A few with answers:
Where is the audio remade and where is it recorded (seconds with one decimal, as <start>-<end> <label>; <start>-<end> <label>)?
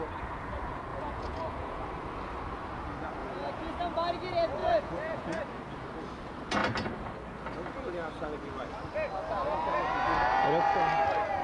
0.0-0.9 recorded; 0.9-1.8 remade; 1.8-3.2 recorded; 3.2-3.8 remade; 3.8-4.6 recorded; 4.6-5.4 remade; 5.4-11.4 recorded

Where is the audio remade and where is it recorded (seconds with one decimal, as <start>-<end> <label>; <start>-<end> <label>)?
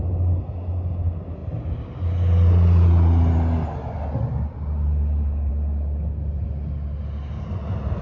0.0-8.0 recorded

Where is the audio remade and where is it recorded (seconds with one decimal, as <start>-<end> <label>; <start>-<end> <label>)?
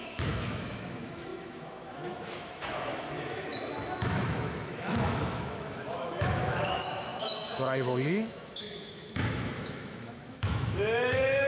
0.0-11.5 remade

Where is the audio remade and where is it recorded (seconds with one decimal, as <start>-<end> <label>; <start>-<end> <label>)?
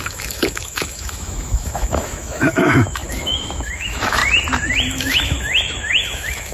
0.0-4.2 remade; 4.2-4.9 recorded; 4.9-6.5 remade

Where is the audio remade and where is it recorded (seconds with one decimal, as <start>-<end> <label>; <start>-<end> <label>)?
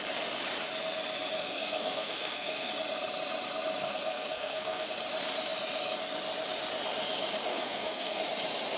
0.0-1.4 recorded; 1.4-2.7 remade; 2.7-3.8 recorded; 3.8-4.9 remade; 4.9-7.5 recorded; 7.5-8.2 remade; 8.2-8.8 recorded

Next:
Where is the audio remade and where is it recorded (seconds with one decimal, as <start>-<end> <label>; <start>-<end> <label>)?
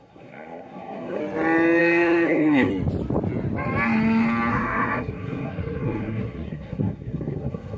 0.0-1.2 remade; 1.2-1.8 recorded; 1.8-2.7 remade; 2.7-4.5 recorded; 4.5-7.8 remade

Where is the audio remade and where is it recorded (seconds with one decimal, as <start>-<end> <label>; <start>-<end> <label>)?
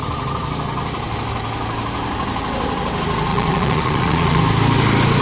0.0-3.3 recorded; 3.3-4.4 remade; 4.4-5.2 recorded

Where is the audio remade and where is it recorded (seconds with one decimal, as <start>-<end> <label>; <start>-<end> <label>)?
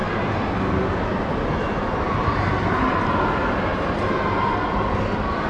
0.0-5.5 recorded